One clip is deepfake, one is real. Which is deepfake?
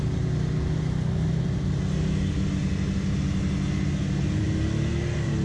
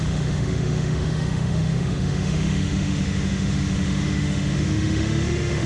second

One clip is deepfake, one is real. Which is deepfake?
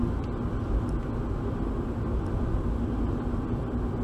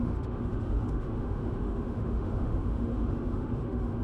second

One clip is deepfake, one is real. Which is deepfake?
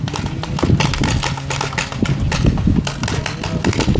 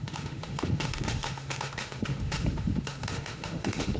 second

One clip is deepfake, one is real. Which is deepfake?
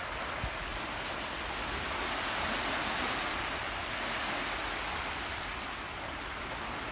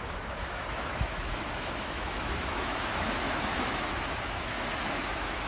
second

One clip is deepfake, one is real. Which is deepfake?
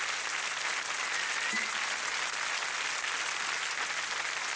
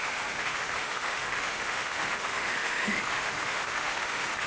second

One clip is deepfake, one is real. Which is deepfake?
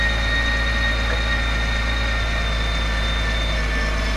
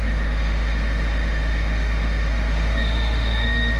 second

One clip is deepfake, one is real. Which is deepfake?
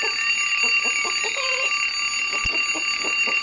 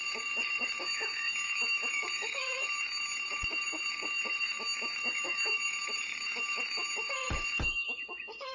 second